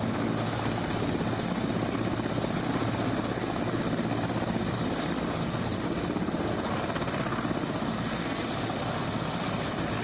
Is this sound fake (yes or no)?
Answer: no